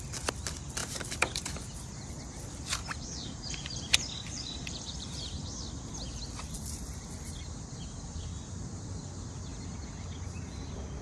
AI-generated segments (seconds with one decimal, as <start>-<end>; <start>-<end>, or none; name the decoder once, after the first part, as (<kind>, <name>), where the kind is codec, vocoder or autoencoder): 0.8-1.9 (vocoder, BigVGAN v2); 2.8-5.3